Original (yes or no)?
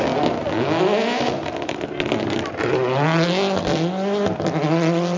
yes